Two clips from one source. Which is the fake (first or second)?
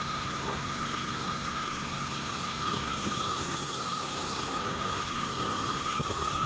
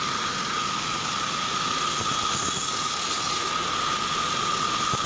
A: first